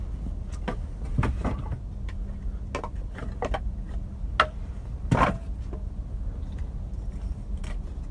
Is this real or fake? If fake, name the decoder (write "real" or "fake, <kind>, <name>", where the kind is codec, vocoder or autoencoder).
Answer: real